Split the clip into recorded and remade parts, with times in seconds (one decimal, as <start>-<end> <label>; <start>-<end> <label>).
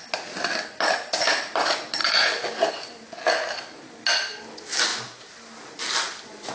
0.0-6.5 recorded